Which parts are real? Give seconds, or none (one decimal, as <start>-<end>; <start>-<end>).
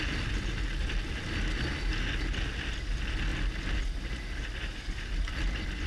0.0-5.9